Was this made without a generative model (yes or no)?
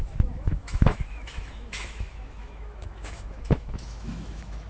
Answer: no